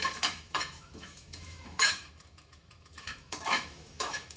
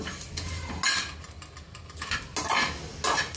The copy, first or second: first